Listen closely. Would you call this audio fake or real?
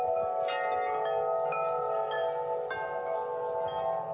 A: real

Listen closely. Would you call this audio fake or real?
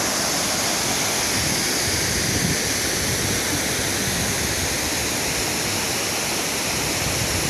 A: real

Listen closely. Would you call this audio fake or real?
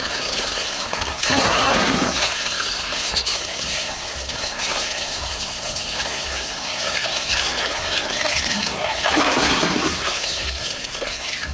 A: fake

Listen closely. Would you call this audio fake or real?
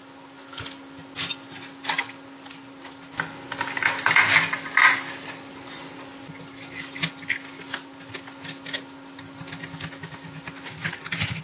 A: real